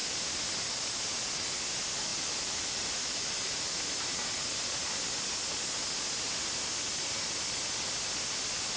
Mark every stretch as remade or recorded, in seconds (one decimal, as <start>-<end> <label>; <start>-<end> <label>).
0.0-2.1 recorded; 2.1-3.7 remade; 3.7-8.8 recorded